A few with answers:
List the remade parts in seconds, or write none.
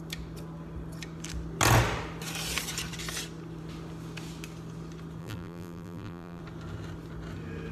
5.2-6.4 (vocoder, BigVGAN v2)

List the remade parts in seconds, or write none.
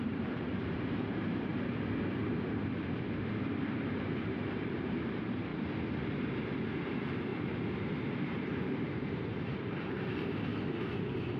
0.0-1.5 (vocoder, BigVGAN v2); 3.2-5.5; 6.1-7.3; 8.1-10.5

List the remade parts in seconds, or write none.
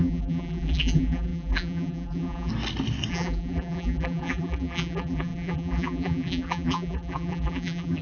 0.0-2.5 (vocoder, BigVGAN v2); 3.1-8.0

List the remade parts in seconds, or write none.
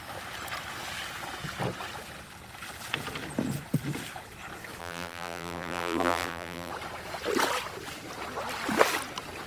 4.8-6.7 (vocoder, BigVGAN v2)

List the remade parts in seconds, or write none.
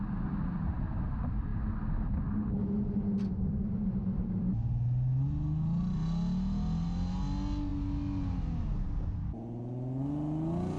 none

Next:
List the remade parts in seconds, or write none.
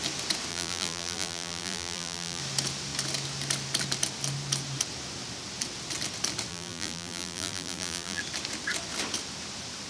0.5-2.4 (vocoder, BigVGAN v2); 6.5-8.2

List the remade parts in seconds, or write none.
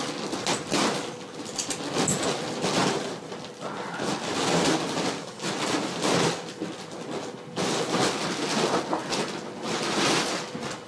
2.8-3.3 (vocoder, BigVGAN v2)